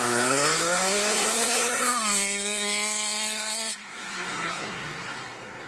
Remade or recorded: remade